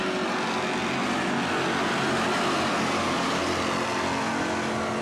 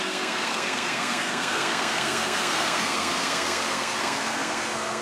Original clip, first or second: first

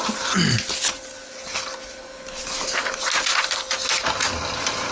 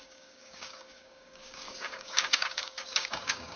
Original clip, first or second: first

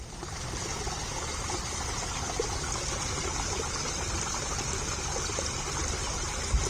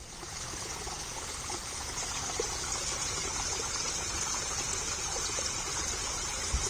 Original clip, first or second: first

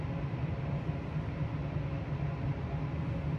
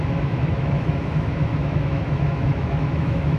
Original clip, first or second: first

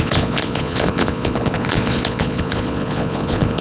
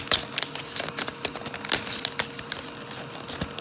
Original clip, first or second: second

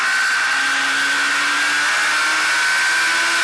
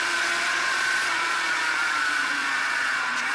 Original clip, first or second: first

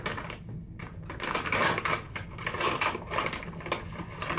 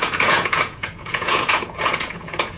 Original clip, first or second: first